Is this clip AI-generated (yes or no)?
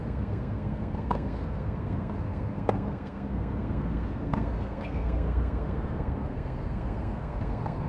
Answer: yes